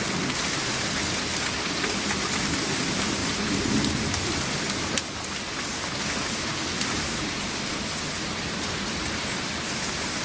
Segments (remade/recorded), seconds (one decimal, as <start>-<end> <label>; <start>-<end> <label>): 0.0-10.2 recorded